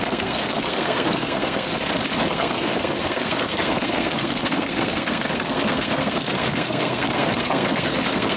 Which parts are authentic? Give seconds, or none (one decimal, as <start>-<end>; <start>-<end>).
1.7-2.3